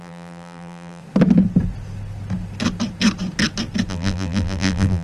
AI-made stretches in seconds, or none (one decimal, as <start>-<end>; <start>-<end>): 0.0-1.0; 3.9-5.0